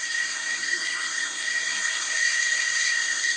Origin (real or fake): fake